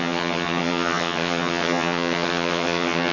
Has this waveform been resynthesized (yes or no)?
yes